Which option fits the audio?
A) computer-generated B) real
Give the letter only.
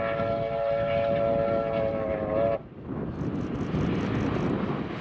B